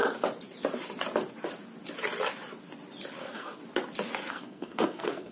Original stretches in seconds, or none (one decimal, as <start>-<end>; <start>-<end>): 0.0-3.2; 3.6-4.3